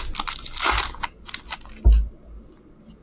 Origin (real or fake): real